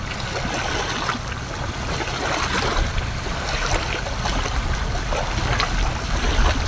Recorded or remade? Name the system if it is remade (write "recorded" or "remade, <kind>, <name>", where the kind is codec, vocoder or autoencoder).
recorded